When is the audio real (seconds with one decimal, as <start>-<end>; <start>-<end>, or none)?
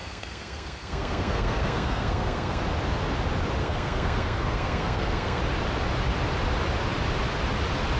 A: 2.6-3.6; 5.4-8.0